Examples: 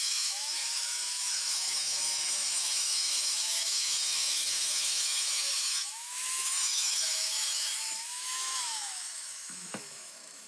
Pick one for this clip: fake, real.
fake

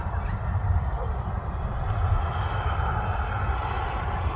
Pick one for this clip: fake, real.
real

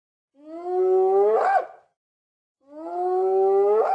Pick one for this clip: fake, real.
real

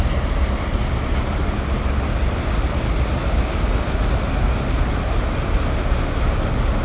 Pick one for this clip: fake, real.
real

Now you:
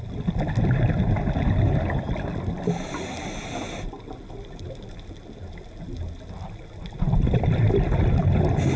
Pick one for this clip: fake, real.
real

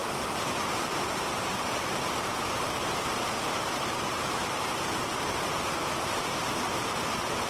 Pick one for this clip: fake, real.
fake